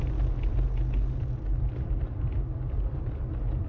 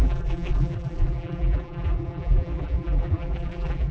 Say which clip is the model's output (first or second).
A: second